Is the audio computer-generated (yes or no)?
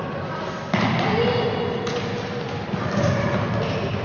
no